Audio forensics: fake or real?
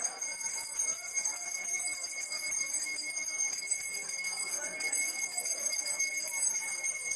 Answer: fake